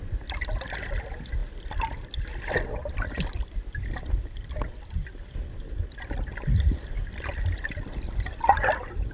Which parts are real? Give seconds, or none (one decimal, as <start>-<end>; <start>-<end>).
0.0-9.1

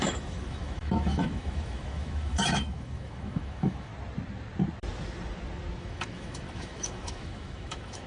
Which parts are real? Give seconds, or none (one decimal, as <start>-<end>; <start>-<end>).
3.9-5.8

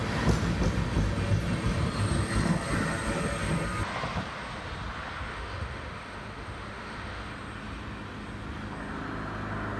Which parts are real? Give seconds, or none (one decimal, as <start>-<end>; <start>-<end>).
0.0-5.3; 7.3-9.8

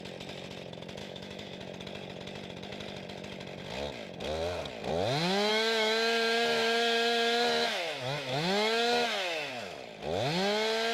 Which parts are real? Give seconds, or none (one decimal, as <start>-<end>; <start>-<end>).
0.0-1.0; 1.6-5.5; 9.5-10.9

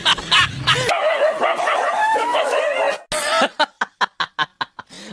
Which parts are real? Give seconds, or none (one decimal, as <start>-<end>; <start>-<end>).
0.0-2.0; 2.6-5.1

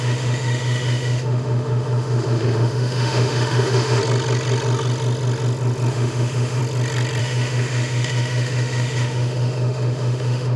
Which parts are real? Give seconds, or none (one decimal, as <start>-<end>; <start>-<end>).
4.0-5.9; 6.6-7.2

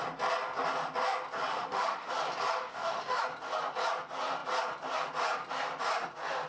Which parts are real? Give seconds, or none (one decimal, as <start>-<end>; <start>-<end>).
0.0-1.5; 2.1-2.6; 3.2-6.5